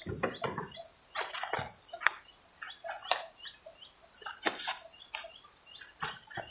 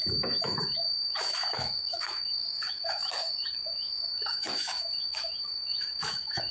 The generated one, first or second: second